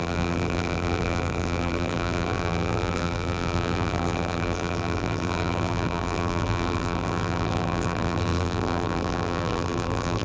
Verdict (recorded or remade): remade